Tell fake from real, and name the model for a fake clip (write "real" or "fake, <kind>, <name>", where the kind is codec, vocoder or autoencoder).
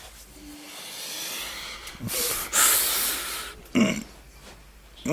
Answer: fake, vocoder, BigVGAN v2